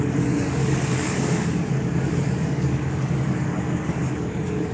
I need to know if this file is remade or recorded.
remade